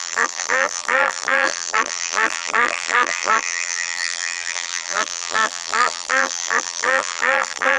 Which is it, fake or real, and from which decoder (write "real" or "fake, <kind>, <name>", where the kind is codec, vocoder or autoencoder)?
fake, vocoder, BigVGAN v2